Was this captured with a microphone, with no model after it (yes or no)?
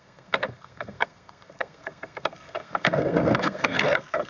no